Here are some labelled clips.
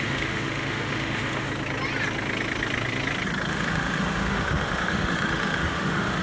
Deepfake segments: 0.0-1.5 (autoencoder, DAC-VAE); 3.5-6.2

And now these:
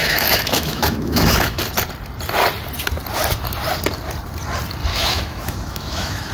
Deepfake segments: 0.0-1.6 (autoencoder, DAC-VAE); 4.9-6.3